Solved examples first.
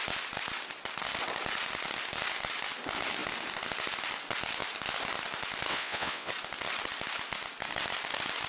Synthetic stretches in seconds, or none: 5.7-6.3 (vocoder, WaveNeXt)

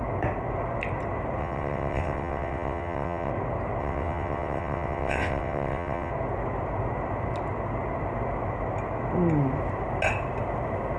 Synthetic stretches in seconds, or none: 1.4-3.3 (vocoder, WaveNeXt); 3.8-6.1

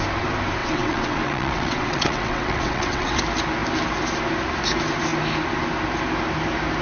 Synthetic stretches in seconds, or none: 0.6-3.2 (vocoder, WaveNeXt)

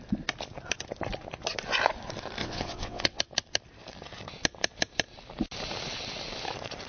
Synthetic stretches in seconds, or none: 2.4-3.2 (vocoder, WaveNeXt)

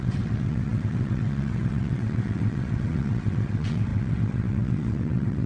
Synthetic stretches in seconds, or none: 0.0-5.5 (vocoder, WaveNeXt)

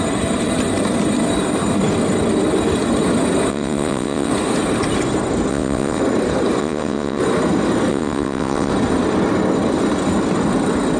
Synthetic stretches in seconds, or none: 3.5-4.3 (vocoder, WaveNeXt); 5.5-6.0; 6.6-7.2; 7.9-8.7